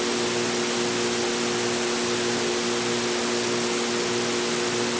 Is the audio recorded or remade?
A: recorded